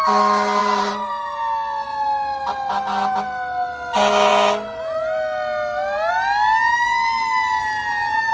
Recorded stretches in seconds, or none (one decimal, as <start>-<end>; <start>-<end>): 0.0-0.6; 1.4-8.3